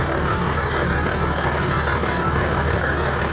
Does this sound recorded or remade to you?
remade